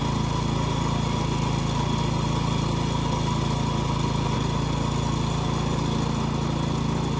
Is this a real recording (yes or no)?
yes